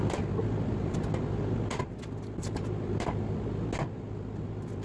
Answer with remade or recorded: recorded